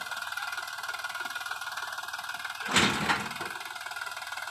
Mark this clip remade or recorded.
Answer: recorded